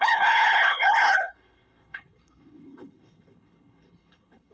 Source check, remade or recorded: remade